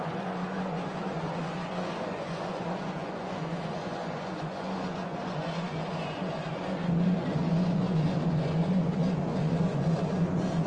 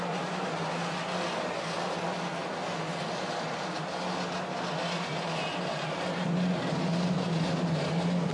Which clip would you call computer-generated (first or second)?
first